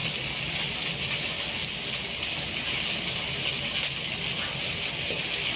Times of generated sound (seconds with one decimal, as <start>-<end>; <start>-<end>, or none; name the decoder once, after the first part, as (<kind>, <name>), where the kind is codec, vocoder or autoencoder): none

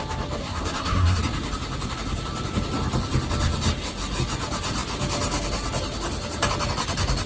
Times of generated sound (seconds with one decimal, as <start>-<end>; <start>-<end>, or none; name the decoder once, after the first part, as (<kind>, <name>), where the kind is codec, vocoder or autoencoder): 0.4-1.2 (codec, SNAC)